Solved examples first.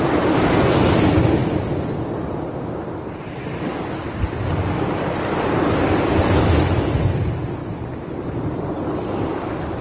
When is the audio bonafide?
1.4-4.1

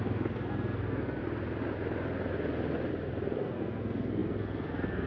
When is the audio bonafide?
1.2-3.4

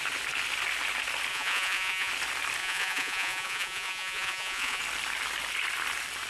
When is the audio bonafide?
0.0-1.3; 2.1-2.6; 4.8-6.3

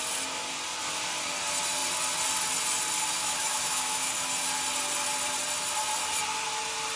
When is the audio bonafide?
0.0-3.2; 4.1-7.0

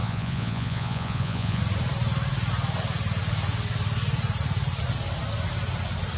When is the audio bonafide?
1.6-6.2

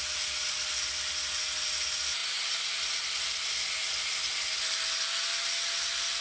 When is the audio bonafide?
0.0-6.2

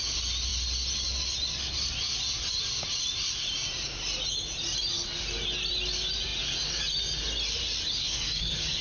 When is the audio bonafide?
0.0-8.0